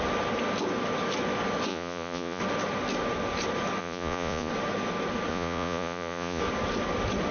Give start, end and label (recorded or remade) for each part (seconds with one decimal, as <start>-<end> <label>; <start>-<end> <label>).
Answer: 0.0-1.7 recorded; 1.7-2.4 remade; 2.4-3.8 recorded; 3.8-4.5 remade; 4.5-5.3 recorded; 5.3-6.4 remade; 6.4-7.3 recorded